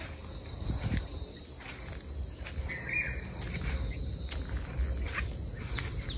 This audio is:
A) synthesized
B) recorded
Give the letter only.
B